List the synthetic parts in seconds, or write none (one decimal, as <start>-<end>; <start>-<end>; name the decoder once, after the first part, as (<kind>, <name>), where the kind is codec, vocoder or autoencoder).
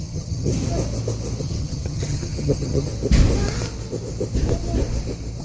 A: 0.0-0.5 (vocoder, HiFi-GAN); 1.4-2.9